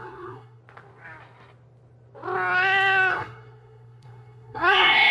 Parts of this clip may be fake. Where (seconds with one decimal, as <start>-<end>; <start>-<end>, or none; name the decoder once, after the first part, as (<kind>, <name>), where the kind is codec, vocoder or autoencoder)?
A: 0.0-0.6 (codec, SNAC); 3.1-5.1